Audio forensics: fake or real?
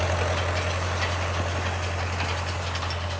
real